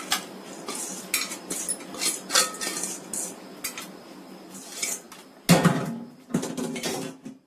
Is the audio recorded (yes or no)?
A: yes